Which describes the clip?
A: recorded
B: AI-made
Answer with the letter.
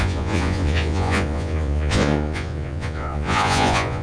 B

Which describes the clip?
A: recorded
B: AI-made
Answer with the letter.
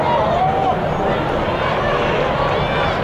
A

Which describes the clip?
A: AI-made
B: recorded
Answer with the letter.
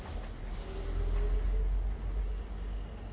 B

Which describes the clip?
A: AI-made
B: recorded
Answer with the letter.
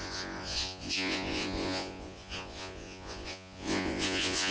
A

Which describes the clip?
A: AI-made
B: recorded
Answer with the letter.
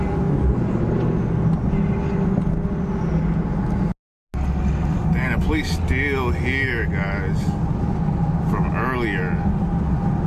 B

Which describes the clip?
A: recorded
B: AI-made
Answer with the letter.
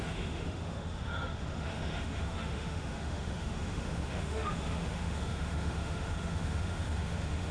B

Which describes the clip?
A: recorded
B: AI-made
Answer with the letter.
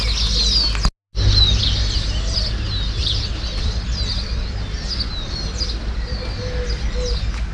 A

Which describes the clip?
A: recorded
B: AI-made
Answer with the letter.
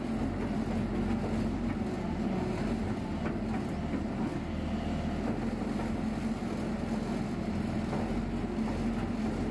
A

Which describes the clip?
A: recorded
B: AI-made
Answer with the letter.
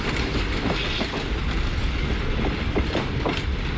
A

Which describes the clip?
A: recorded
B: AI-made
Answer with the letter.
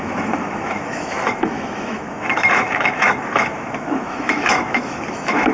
B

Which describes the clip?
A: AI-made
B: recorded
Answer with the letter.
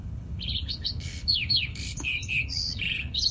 A